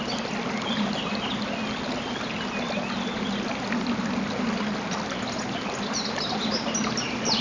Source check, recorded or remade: recorded